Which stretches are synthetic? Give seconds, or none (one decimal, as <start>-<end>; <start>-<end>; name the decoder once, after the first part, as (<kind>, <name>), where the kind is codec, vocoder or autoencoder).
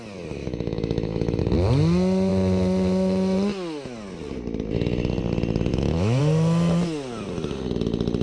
0.4-1.4 (autoencoder, DAC-VAE); 5.7-6.2